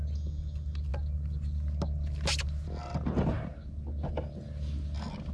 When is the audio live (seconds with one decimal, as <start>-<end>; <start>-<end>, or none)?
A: 0.0-5.3